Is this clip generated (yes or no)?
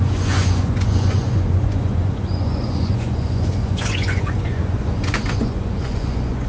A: yes